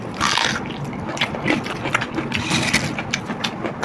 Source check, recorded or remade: recorded